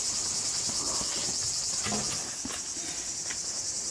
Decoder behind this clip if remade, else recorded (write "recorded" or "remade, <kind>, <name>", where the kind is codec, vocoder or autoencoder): recorded